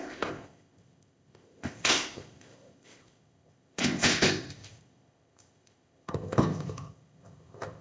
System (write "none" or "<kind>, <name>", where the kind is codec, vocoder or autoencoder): codec, ZipCodec